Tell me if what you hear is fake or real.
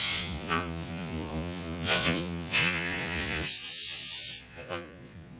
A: fake